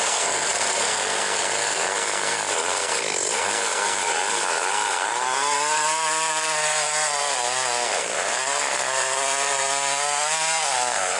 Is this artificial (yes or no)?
yes